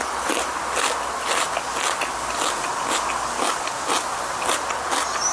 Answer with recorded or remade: recorded